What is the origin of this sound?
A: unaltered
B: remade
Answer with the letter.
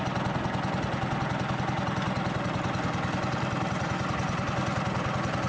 A